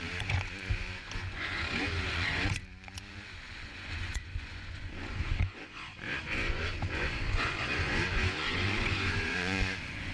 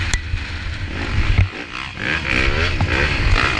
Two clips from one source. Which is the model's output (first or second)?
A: first